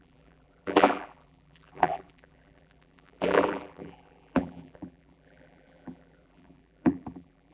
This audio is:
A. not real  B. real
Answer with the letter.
A